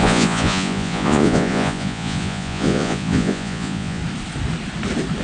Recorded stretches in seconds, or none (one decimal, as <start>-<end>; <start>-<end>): 4.0-5.2